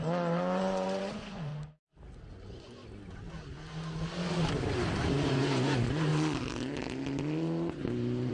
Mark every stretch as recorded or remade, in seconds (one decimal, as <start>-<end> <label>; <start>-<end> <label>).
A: 0.0-1.5 remade; 1.5-2.3 recorded; 2.3-2.8 remade; 2.8-5.3 recorded; 5.3-6.1 remade; 6.1-8.3 recorded